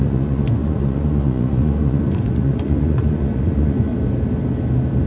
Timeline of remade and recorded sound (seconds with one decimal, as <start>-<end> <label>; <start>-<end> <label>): 0.0-3.9 remade; 3.9-5.1 recorded